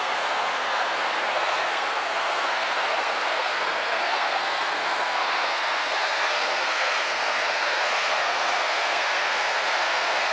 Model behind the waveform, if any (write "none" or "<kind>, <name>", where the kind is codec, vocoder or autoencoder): codec, SNAC